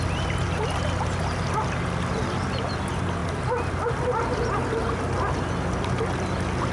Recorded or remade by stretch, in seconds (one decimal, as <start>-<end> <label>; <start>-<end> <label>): 0.0-6.7 recorded